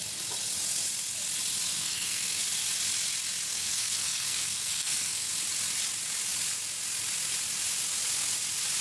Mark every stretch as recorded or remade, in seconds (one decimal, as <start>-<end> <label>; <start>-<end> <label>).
0.0-1.7 recorded; 1.7-2.4 remade; 2.4-3.5 recorded; 3.5-5.3 remade; 5.3-8.8 recorded